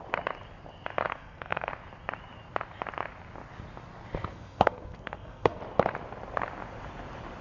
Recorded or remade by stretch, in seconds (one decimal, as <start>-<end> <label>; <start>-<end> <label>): 0.0-1.1 recorded; 1.1-1.7 remade; 1.7-4.3 recorded; 4.3-5.6 remade; 5.6-7.4 recorded